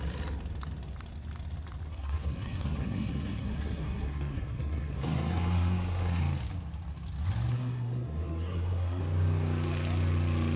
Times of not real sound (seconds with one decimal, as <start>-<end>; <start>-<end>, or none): 1.9-6.2; 7.5-9.0